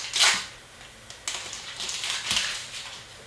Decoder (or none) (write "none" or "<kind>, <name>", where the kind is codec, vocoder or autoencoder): none